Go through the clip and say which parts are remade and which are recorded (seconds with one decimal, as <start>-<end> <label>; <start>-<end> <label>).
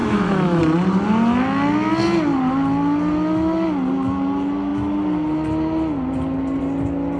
0.0-0.6 remade; 0.6-7.2 recorded